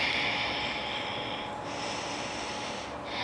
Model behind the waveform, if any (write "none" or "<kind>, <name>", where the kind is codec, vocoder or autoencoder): none